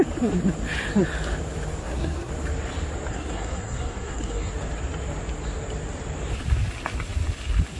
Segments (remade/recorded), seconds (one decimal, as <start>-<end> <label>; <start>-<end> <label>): 0.0-1.8 recorded; 1.8-2.3 remade; 2.3-3.1 recorded; 3.1-4.5 remade; 4.5-7.8 recorded